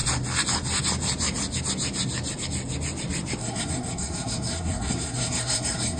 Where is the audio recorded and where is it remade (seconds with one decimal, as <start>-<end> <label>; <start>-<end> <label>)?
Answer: 0.0-3.4 recorded; 3.4-6.0 remade